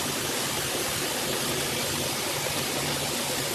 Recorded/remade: recorded